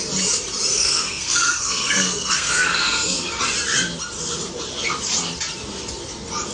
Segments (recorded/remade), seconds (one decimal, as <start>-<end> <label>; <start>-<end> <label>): 0.0-0.7 recorded; 0.7-3.4 remade; 3.4-6.5 recorded